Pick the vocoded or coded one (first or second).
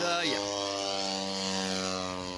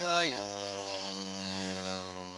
second